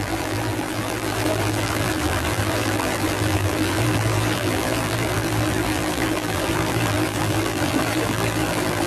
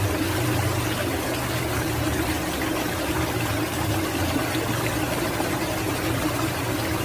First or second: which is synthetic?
first